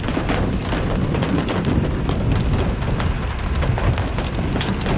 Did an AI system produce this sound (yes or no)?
no